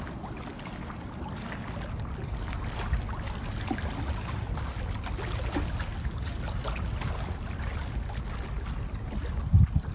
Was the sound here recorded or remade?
recorded